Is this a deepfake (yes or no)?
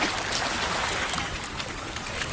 no